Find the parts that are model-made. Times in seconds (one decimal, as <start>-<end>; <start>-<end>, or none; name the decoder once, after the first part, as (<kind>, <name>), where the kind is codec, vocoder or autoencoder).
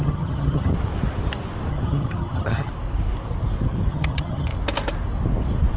0.0-0.7 (vocoder, HiFi-GAN); 1.7-2.7; 3.9-4.5